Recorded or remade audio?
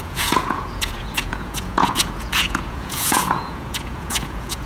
remade